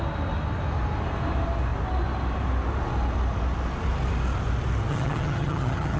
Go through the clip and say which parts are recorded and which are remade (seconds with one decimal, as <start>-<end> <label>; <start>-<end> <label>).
0.0-4.9 recorded; 4.9-6.0 remade